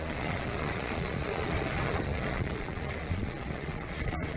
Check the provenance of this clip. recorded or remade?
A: remade